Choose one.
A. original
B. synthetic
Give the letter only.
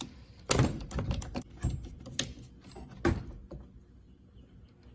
A